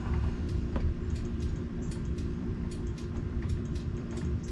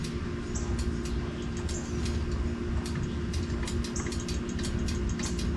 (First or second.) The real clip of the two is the second